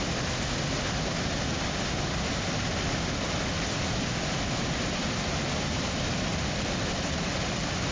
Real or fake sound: real